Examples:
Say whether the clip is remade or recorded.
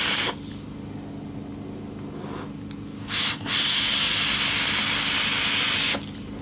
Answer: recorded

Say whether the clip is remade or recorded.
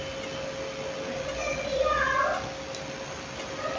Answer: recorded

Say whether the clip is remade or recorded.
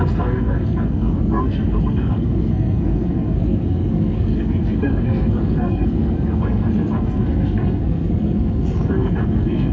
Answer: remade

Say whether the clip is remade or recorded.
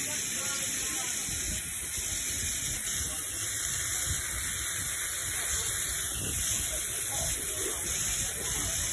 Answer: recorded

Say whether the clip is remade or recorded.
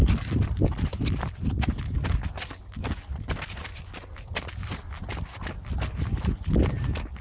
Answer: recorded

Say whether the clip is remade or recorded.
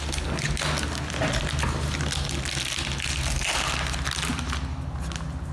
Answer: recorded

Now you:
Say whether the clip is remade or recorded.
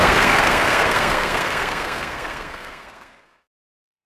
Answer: remade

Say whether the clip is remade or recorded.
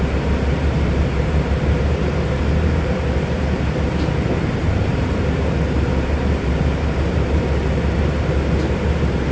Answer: remade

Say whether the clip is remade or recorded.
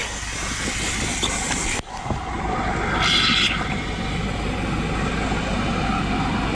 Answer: recorded